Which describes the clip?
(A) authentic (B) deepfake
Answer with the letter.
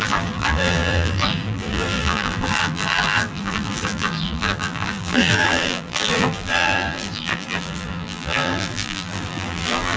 B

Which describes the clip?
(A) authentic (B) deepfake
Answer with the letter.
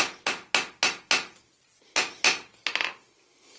A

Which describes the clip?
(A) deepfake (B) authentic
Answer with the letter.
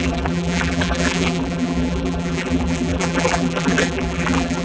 A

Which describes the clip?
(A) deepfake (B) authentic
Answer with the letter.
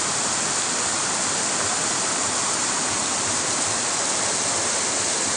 B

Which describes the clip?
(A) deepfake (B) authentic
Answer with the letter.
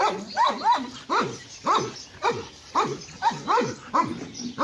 B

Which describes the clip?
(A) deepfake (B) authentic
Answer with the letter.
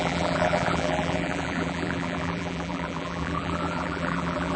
A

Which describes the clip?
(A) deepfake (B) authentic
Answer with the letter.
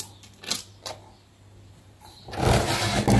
B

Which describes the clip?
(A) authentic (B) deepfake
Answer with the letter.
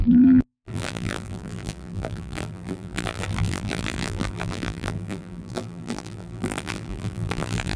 B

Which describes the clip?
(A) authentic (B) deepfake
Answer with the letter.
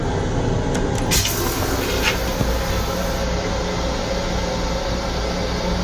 A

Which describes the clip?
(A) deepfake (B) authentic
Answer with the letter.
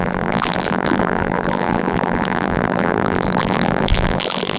A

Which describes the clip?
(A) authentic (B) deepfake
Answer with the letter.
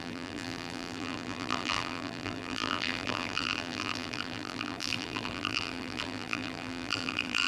B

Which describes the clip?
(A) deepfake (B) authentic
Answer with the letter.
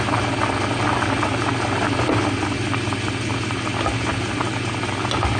B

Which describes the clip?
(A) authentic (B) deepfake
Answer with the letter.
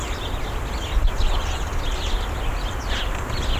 A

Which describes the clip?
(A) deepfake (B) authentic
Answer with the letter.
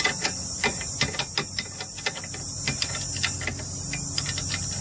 A